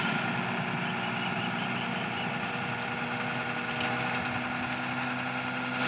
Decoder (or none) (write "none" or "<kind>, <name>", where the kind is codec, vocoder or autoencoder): none